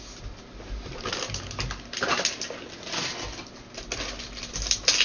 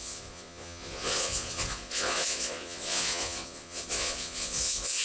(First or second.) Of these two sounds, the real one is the first